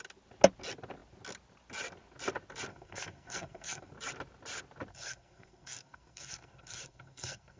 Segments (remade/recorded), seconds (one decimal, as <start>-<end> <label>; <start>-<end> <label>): 0.0-2.7 recorded; 2.7-3.9 remade; 3.9-4.9 recorded; 4.9-7.6 remade